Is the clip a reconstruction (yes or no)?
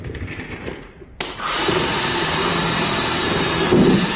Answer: yes